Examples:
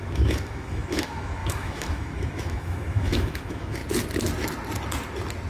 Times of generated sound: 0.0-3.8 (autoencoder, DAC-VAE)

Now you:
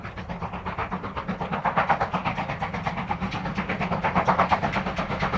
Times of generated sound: none